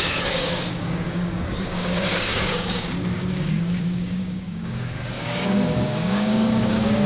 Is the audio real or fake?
fake